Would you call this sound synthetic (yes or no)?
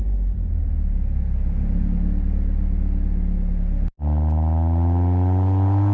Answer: no